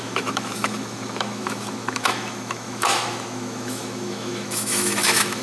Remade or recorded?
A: remade